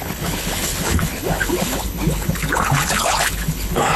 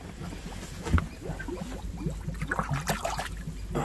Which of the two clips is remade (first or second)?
first